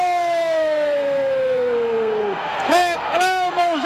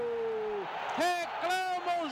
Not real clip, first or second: first